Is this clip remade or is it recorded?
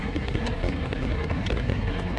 remade